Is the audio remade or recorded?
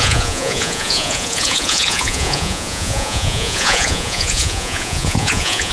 remade